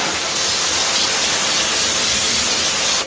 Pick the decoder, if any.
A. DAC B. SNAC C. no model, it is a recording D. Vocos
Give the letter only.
C